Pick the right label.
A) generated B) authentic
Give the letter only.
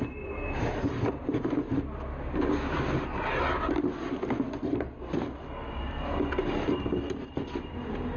B